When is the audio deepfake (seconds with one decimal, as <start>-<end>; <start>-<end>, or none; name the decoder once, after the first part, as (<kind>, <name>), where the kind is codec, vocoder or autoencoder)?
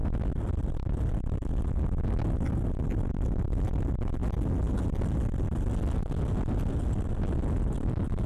none